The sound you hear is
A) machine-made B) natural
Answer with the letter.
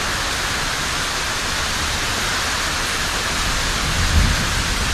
B